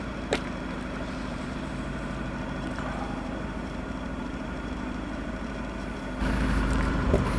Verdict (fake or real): fake